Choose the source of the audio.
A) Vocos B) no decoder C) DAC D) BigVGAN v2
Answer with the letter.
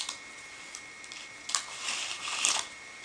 B